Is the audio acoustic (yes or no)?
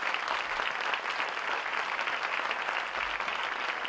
yes